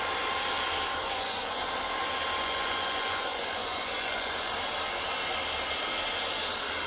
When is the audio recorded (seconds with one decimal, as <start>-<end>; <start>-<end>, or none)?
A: 0.0-1.0; 1.6-2.4; 4.5-6.9